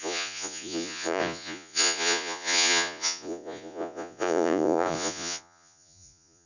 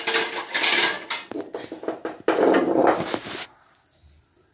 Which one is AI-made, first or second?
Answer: first